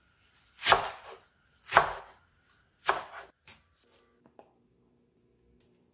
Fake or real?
real